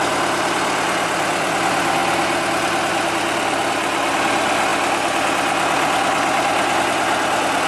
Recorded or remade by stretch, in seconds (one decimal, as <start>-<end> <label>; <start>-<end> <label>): 0.0-7.7 recorded